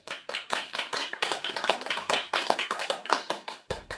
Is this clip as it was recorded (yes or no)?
no